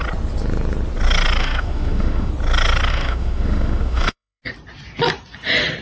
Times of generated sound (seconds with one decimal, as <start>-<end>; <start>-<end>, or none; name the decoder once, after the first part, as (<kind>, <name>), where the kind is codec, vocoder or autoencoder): 1.4-2.3 (autoencoder, DAC-VAE); 2.9-4.4